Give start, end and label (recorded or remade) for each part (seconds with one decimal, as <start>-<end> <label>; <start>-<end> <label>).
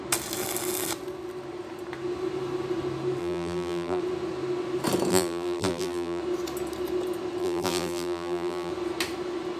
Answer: 0.0-3.2 recorded; 3.2-4.0 remade; 4.0-5.1 recorded; 5.1-6.2 remade; 6.2-7.4 recorded; 7.4-8.7 remade; 8.7-9.6 recorded